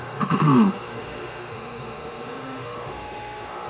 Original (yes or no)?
no